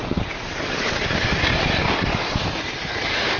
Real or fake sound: fake